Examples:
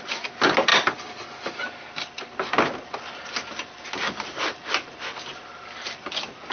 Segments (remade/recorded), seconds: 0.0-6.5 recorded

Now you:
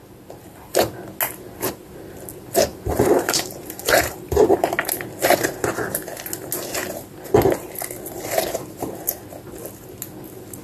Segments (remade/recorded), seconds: 0.0-0.4 recorded; 0.4-0.9 remade; 0.9-2.7 recorded; 2.7-4.7 remade; 4.7-10.6 recorded

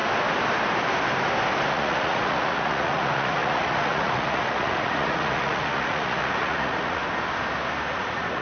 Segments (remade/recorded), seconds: 0.0-1.7 recorded; 1.7-7.0 remade; 7.0-7.9 recorded; 7.9-8.4 remade

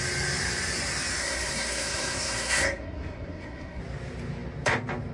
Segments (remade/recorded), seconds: 0.0-1.2 recorded; 1.2-3.8 remade; 3.8-5.1 recorded

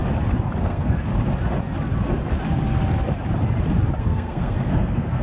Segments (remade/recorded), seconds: 0.0-0.6 recorded; 0.6-1.1 remade; 1.1-4.0 recorded; 4.0-5.2 remade

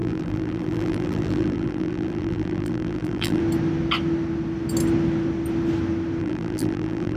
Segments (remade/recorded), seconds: 0.0-3.4 remade; 3.4-6.2 recorded; 6.2-7.2 remade

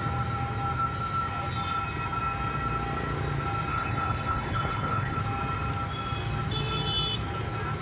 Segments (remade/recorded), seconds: 0.0-3.7 recorded; 3.7-5.2 remade; 5.2-7.8 recorded